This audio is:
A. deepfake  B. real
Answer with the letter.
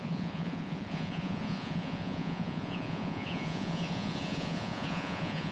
A